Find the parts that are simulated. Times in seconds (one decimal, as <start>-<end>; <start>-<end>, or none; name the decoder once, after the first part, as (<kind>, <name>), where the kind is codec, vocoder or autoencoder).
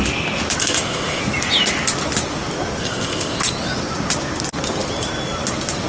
0.6-1.2 (codec, ZipCodec); 2.8-3.4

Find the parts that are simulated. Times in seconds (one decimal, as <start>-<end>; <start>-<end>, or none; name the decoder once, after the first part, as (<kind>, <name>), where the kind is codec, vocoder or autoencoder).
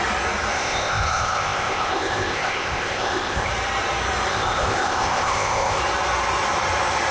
0.5-3.5 (codec, ZipCodec); 4.3-5.8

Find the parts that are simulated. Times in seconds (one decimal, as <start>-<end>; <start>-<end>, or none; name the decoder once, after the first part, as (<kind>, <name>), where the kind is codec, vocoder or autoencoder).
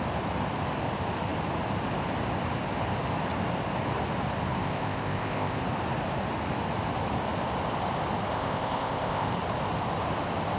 4.6-5.6 (codec, ZipCodec); 8.3-9.3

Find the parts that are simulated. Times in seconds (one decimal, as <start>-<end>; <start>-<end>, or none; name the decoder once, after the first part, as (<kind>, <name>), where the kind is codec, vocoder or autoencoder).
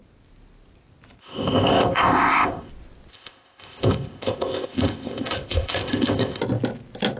1.2-2.7 (codec, ZipCodec); 3.1-6.4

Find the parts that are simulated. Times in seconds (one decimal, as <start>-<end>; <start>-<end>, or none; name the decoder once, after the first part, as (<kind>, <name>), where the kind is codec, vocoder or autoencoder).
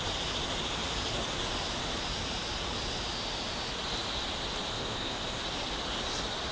4.7-5.4 (codec, ZipCodec)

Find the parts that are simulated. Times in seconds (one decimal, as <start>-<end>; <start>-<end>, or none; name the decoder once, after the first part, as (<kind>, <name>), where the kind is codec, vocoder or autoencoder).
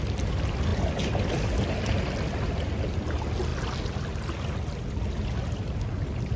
none